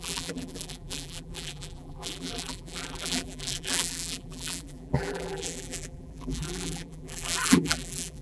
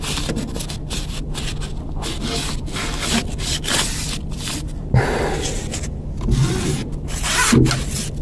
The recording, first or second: second